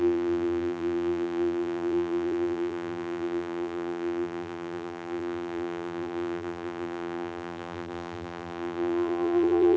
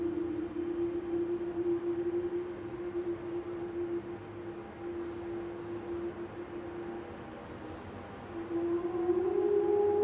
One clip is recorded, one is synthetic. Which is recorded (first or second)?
second